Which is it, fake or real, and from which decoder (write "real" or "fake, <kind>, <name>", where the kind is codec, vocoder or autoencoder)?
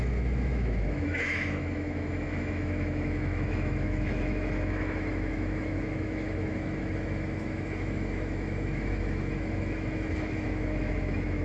fake, autoencoder, DAC-VAE